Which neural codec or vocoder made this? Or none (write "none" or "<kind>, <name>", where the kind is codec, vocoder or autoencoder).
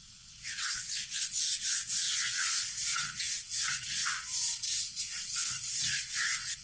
vocoder, WaveNeXt